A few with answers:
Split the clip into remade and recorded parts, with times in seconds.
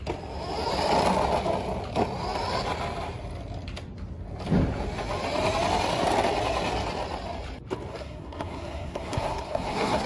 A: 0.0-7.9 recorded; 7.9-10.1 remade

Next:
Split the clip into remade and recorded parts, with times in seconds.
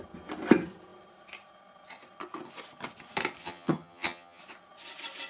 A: 0.0-3.4 recorded; 3.4-4.4 remade; 4.4-5.3 recorded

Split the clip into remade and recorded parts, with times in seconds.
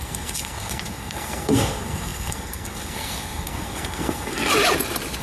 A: 0.0-4.5 remade; 4.5-5.2 recorded